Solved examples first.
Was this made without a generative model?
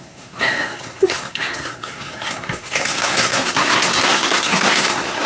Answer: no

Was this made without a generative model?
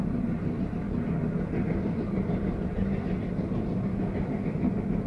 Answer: yes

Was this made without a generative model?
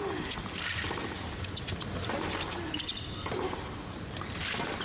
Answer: yes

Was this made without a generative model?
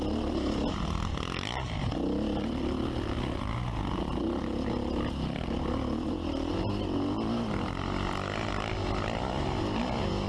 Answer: yes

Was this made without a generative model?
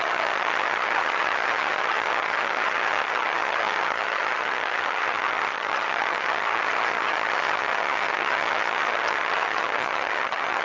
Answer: no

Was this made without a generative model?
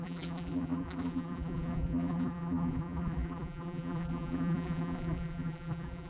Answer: no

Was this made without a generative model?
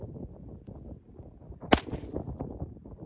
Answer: yes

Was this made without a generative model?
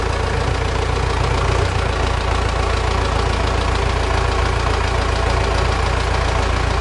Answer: yes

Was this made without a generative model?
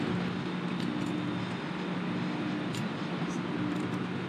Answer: yes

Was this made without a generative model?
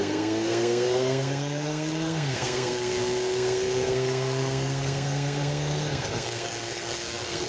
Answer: no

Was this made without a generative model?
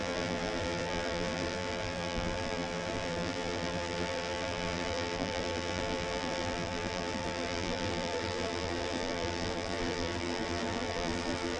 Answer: no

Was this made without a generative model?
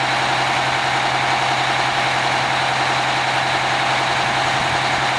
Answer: yes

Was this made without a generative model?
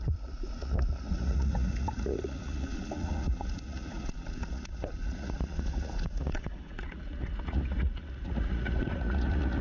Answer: no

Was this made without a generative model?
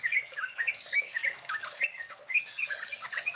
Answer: no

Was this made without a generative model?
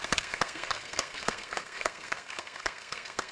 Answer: no